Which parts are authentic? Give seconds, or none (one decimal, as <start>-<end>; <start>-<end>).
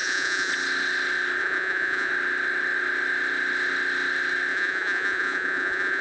0.5-1.4; 2.1-4.5